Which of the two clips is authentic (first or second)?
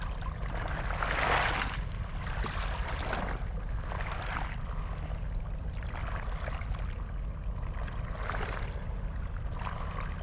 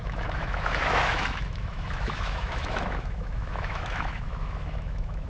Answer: first